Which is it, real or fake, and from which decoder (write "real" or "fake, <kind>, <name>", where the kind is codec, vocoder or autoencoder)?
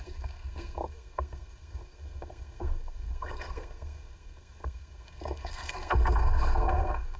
fake, codec, SNAC